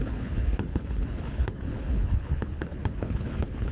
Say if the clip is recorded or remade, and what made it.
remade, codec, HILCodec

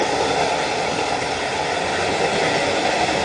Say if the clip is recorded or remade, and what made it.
recorded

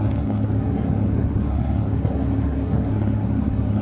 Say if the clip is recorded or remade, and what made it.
remade, codec, SNAC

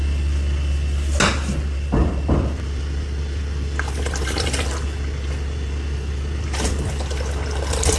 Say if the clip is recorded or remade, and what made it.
recorded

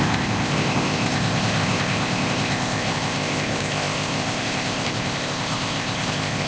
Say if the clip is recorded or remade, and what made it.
remade, codec, ZipCodec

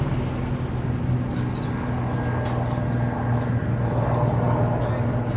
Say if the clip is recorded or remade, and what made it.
recorded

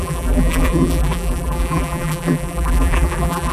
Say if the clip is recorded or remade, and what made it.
remade, vocoder, BigVGAN v2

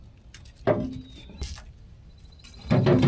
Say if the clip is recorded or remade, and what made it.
recorded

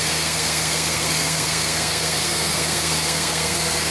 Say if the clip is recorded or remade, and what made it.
remade, codec, SNAC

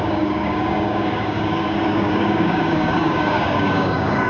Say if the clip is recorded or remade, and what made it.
remade, codec, DAC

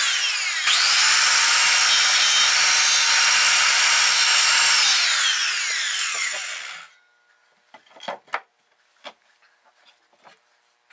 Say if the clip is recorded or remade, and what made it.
recorded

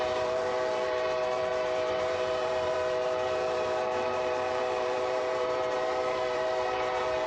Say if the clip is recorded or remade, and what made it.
remade, vocoder, BigVGAN v2